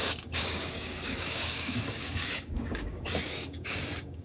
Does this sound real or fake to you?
fake